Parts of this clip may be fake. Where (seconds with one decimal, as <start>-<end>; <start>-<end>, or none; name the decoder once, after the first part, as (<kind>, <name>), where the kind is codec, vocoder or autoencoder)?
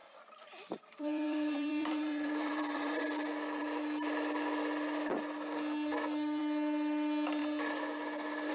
0.0-3.0 (vocoder, BigVGAN v2)